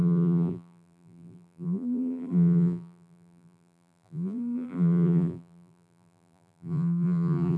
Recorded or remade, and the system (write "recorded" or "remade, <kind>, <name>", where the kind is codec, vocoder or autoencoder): remade, vocoder, BigVGAN v2